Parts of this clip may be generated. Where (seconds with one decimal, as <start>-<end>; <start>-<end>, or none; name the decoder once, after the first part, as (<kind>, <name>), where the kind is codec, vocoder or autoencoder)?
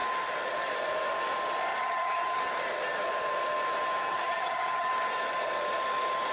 1.7-2.4 (vocoder, HiFi-GAN); 4.0-4.9